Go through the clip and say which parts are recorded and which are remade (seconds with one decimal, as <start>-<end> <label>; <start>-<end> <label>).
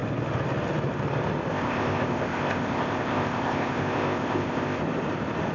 0.0-1.5 recorded; 1.5-4.8 remade; 4.8-5.5 recorded